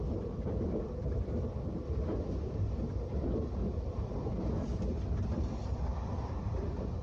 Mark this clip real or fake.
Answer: fake